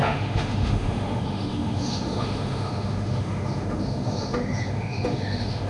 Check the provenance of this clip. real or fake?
fake